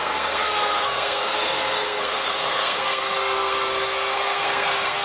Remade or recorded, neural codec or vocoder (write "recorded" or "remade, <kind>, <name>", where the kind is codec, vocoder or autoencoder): remade, codec, SNAC